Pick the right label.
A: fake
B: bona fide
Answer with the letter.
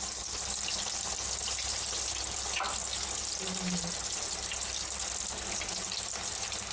B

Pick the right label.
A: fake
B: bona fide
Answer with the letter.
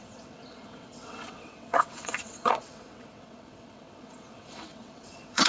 A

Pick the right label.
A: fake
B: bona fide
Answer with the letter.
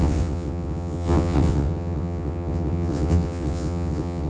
A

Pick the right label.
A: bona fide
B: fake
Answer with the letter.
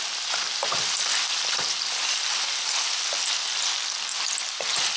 A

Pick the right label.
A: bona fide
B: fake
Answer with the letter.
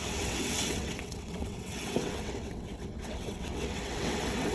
B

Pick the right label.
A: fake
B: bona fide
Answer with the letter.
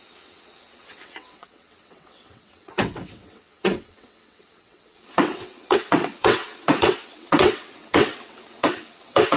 A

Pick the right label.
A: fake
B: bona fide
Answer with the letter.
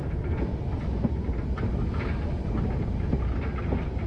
B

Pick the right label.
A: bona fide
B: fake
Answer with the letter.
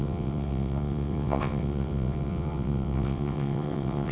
B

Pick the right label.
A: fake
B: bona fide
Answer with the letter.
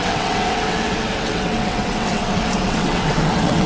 A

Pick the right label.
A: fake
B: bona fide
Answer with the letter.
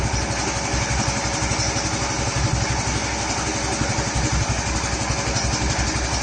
B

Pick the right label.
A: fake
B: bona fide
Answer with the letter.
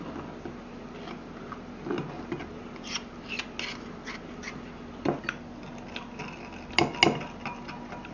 B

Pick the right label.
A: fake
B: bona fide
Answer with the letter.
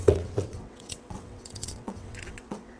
A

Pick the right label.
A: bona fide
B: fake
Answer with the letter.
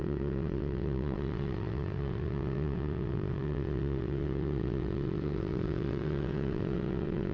B